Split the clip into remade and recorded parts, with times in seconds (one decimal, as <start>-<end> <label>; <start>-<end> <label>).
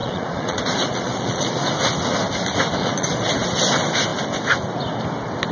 0.0-1.7 remade; 1.7-2.8 recorded; 2.8-3.3 remade; 3.3-5.5 recorded